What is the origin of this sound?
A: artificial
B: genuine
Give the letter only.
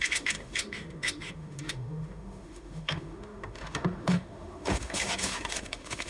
A